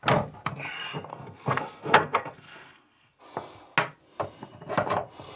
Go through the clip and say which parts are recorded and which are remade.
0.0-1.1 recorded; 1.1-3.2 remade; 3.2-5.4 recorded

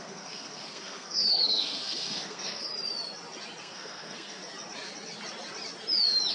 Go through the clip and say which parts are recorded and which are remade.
0.0-2.7 remade; 2.7-3.6 recorded; 3.6-4.4 remade; 4.4-6.3 recorded

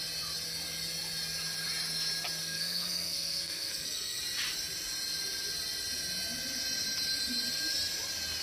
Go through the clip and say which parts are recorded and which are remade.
0.0-2.4 recorded; 2.4-4.2 remade; 4.2-8.4 recorded

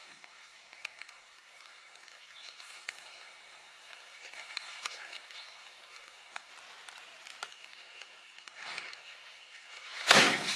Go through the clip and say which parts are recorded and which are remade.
0.0-6.5 remade; 6.5-7.5 recorded; 7.5-10.6 remade